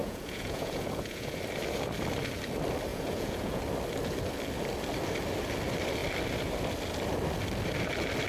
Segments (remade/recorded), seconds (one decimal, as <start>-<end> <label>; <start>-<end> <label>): 0.0-1.4 remade; 1.4-2.9 recorded; 2.9-3.6 remade; 3.6-8.3 recorded